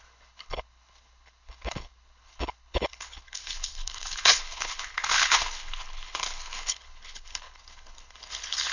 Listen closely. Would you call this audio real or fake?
fake